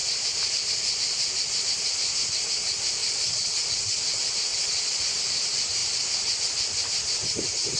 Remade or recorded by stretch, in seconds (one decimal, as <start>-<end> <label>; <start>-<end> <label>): 0.0-3.0 recorded; 3.0-3.7 remade; 3.7-4.5 recorded; 4.5-5.0 remade; 5.0-7.8 recorded